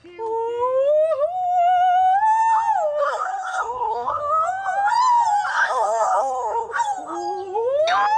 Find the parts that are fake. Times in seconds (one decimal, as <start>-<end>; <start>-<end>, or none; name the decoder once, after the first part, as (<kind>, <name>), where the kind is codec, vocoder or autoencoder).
3.0-4.2 (codec, SNAC); 5.5-6.7